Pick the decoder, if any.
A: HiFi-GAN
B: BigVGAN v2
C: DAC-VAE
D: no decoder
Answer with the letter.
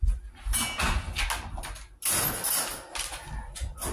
D